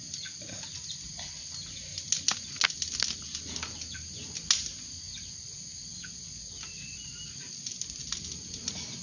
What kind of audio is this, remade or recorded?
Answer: recorded